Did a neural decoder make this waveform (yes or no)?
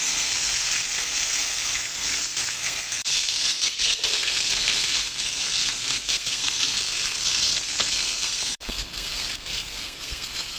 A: yes